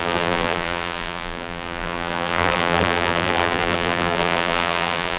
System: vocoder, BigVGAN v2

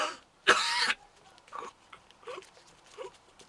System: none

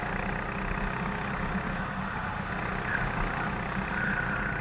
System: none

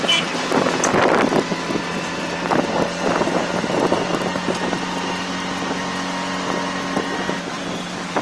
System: none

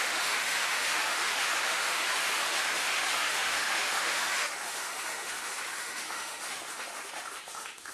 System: autoencoder, DAC-VAE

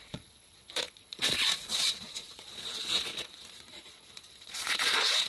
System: vocoder, Vocos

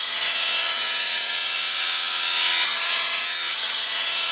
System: vocoder, HiFi-GAN